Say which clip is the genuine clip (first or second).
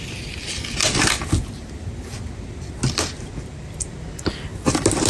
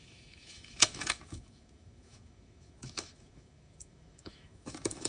first